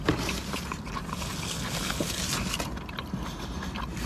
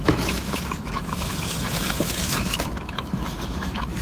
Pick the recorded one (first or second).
first